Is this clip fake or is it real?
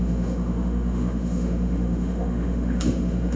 fake